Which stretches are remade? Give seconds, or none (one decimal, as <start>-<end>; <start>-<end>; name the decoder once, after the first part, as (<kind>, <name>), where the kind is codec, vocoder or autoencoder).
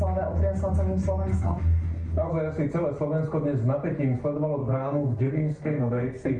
1.3-2.3 (codec, SNAC); 4.6-6.4